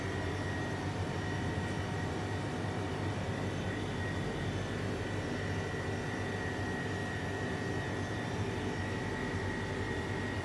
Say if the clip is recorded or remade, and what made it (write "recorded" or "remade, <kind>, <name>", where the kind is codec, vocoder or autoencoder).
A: recorded